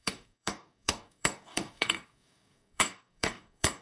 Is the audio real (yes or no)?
no